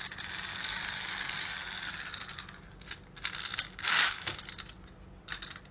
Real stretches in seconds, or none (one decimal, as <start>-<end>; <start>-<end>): 0.0-0.5; 1.5-3.5; 4.4-5.7